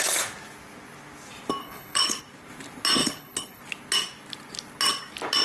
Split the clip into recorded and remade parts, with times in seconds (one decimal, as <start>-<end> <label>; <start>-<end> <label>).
0.0-1.6 recorded; 1.6-2.2 remade; 2.2-3.0 recorded; 3.0-3.6 remade; 3.6-5.4 recorded